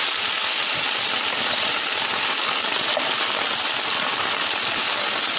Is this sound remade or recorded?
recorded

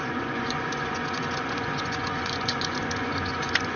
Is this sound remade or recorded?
remade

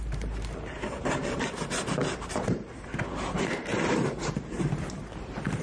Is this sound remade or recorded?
remade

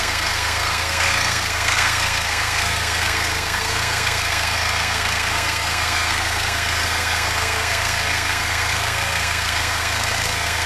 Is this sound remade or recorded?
remade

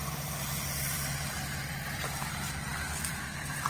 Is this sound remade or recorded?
recorded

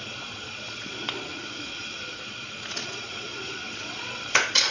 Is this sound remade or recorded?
remade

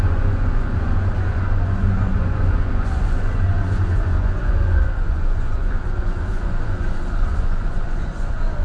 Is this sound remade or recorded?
remade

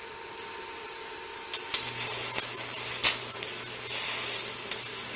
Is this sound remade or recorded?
recorded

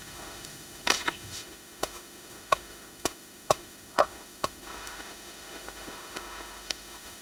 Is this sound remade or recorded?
remade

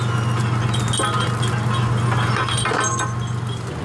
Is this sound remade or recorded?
recorded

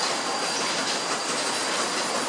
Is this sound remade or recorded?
recorded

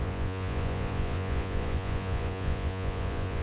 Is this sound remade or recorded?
remade